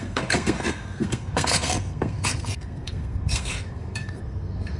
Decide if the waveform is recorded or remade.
remade